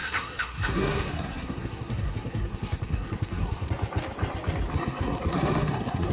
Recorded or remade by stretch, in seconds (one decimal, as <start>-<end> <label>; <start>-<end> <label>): 0.0-3.7 remade; 3.7-4.7 recorded; 4.7-6.1 remade